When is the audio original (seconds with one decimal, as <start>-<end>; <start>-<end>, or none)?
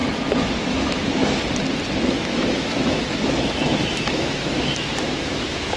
0.0-0.6; 1.2-2.1